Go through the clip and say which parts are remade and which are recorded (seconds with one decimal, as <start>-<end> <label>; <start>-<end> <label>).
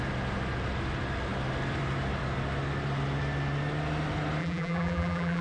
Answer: 0.0-4.4 recorded; 4.4-5.4 remade